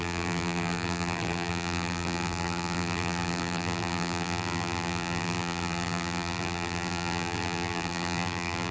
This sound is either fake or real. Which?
fake